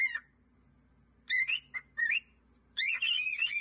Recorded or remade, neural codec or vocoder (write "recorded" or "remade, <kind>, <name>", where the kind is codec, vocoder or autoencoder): recorded